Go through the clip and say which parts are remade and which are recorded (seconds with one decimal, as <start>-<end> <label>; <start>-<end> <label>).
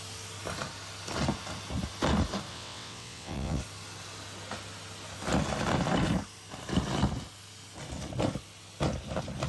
0.0-2.5 recorded; 2.5-3.6 remade; 3.6-9.5 recorded